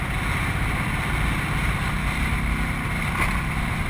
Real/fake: real